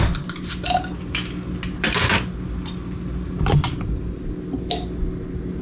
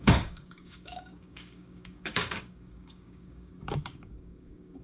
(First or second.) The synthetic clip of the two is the second